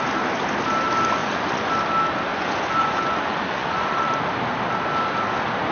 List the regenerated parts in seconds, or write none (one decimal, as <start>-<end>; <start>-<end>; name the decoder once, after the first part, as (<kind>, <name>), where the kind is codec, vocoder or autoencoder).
1.2-1.7 (vocoder, Vocos); 2.3-4.1